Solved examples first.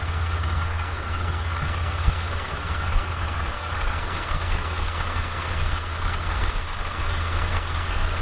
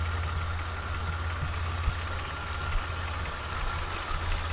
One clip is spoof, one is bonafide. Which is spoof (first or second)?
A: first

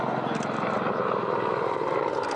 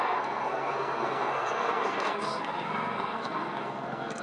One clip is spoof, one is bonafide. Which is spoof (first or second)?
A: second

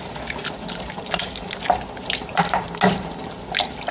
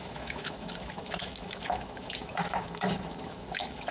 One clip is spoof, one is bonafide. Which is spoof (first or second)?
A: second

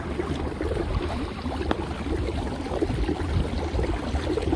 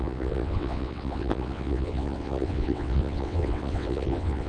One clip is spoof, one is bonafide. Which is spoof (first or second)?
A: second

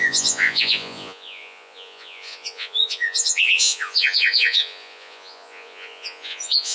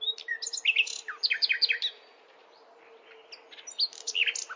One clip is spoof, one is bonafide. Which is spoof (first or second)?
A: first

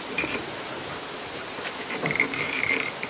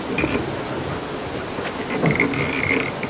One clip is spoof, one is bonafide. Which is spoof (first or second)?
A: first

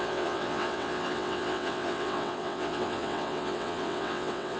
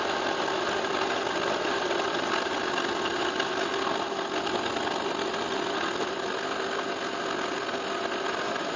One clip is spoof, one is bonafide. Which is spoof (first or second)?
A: first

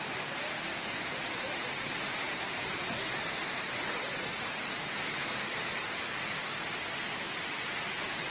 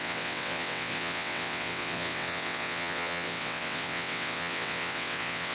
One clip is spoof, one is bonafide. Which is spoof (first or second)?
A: second